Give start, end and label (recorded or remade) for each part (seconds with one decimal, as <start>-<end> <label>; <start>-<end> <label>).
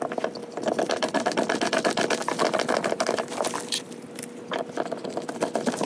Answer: 0.0-0.4 recorded; 0.4-3.9 remade; 3.9-5.9 recorded